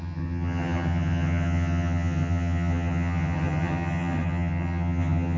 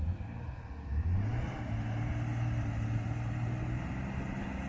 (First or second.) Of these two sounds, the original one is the second